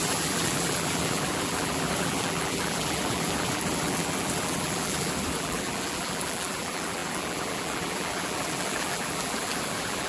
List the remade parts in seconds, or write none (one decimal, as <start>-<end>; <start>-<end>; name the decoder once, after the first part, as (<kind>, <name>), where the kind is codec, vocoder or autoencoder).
0.0-10.1 (vocoder, BigVGAN v2)